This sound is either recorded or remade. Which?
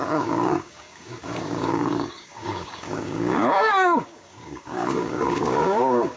remade